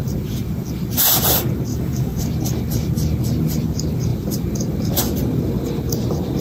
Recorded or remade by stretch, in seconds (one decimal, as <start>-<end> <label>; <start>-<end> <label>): 0.0-1.7 recorded; 1.7-2.2 remade; 2.2-6.4 recorded